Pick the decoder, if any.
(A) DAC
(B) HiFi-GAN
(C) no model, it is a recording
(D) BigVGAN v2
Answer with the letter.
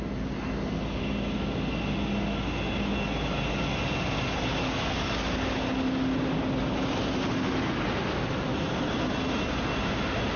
C